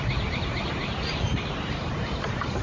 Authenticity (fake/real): fake